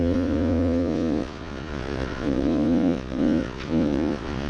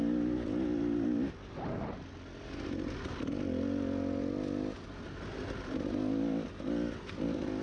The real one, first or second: second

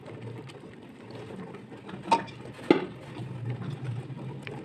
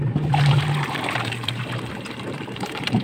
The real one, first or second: first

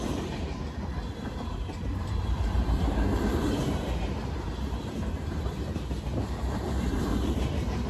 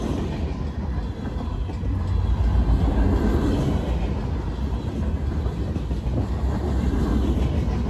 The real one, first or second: second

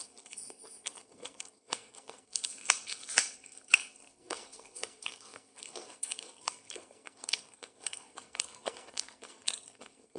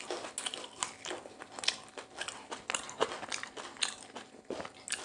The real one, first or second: second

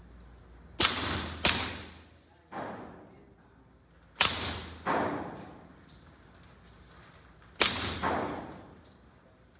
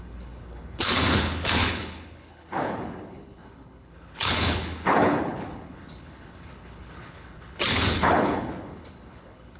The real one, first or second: first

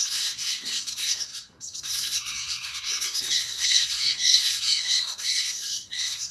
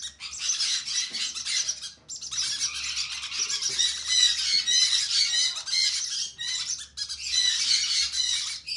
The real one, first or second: second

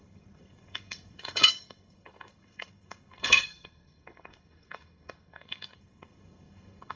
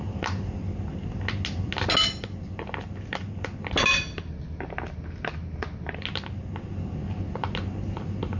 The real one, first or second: second